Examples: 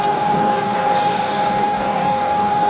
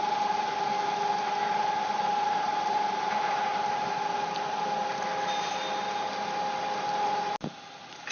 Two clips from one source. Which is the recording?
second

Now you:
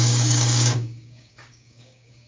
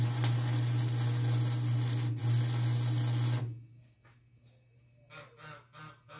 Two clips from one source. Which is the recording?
second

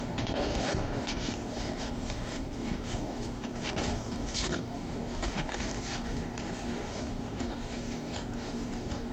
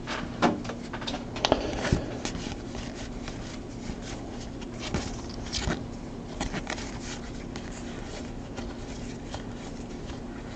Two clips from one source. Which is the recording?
second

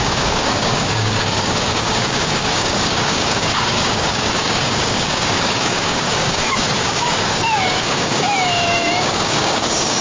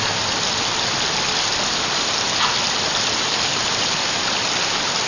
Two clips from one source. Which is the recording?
second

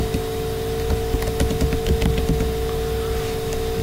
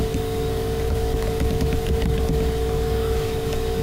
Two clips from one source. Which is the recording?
first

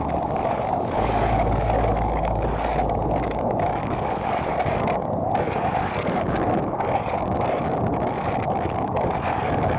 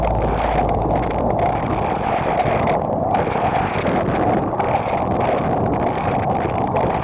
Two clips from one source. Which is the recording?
second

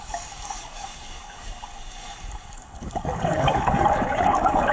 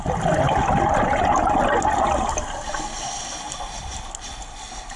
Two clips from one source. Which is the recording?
second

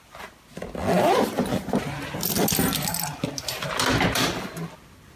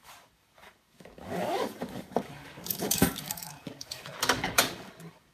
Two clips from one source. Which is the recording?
first